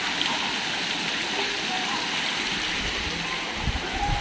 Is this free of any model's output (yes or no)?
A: yes